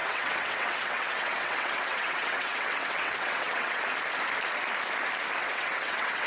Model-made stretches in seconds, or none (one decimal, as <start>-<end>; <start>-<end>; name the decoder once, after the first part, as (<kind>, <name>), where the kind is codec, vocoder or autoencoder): 0.0-3.8 (vocoder, WaveNeXt); 5.4-6.3